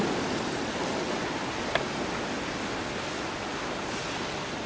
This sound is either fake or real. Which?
real